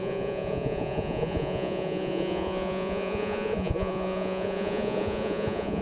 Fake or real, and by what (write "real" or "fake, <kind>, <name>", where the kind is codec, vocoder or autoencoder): fake, vocoder, Vocos